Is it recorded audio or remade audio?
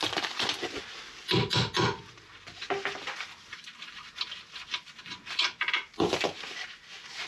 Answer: recorded